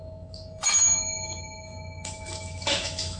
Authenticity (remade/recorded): remade